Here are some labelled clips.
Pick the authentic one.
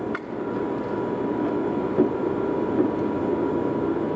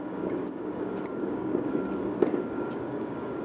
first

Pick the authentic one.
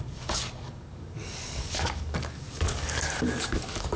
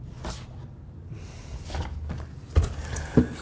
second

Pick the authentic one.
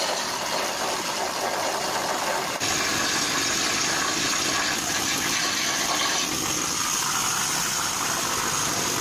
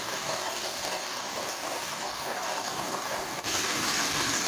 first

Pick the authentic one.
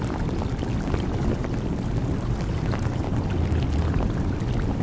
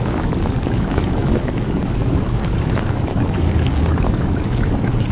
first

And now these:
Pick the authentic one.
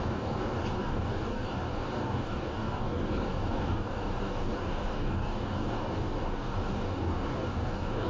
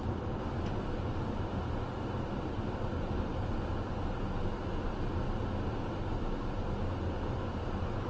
second